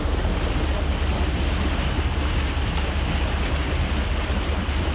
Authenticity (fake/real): real